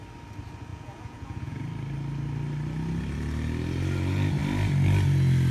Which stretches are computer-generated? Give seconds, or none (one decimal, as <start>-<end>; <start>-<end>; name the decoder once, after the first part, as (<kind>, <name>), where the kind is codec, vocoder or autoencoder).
0.7-1.6 (vocoder, Vocos)

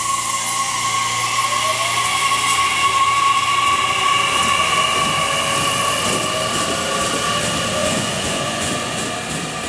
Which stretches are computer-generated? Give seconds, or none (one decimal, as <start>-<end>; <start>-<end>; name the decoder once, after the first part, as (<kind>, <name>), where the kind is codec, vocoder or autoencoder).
7.8-9.0 (vocoder, Vocos)

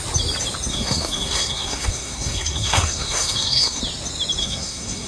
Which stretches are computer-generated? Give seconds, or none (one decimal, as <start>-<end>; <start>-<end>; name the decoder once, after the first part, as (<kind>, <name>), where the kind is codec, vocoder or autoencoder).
0.7-3.8 (codec, SNAC); 4.4-5.1

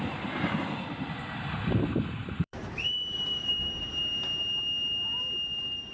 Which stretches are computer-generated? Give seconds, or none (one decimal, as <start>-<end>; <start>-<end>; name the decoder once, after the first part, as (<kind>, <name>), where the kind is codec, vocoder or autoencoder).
2.2-4.0 (vocoder, BigVGAN v2)